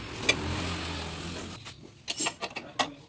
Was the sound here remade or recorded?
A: recorded